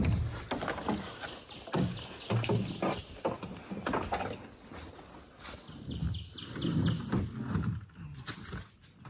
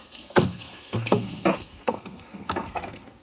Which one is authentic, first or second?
first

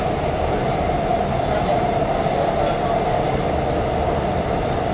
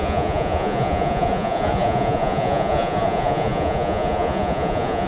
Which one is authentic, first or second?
first